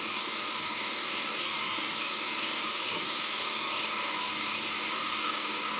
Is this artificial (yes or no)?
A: yes